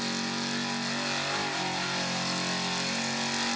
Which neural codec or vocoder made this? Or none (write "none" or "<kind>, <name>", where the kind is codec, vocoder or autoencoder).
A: none